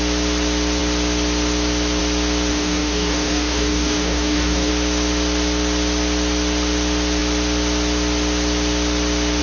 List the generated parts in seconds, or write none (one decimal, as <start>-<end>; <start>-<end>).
2.5-4.7